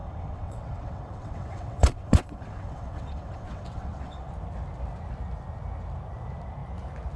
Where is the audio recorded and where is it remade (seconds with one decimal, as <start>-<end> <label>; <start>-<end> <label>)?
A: 0.0-4.3 remade; 4.3-7.2 recorded